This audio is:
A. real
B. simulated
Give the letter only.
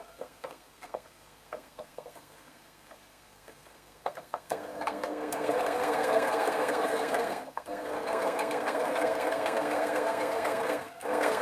B